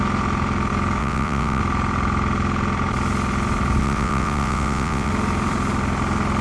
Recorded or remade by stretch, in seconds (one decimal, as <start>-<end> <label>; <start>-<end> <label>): 0.0-1.0 recorded; 1.0-1.6 remade; 1.6-3.8 recorded; 3.8-5.1 remade; 5.1-6.4 recorded